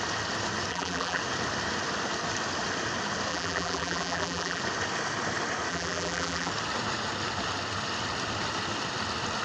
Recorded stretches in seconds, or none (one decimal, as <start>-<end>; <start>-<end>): 0.0-0.7; 1.2-3.3; 4.6-5.7; 6.5-9.4